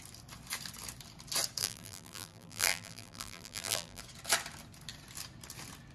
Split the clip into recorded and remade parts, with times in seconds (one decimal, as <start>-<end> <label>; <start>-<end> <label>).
0.0-1.6 recorded; 1.6-4.0 remade; 4.0-5.9 recorded